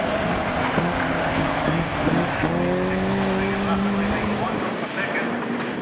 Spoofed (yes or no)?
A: no